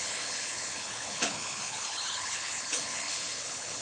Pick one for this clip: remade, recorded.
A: remade